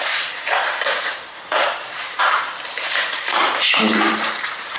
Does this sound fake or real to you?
fake